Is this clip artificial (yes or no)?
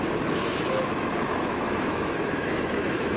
yes